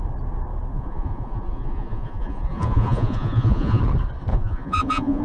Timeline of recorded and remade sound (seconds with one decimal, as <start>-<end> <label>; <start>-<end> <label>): 0.0-0.7 recorded; 0.7-3.8 remade; 3.8-4.3 recorded; 4.3-5.2 remade